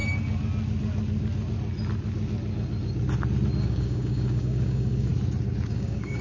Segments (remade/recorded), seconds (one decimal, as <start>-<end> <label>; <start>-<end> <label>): 0.0-3.6 recorded; 3.6-5.1 remade; 5.1-5.7 recorded; 5.7-6.2 remade